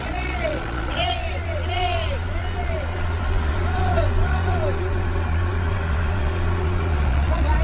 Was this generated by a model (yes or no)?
yes